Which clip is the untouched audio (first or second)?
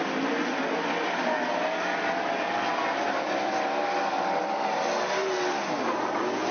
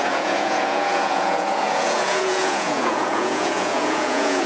first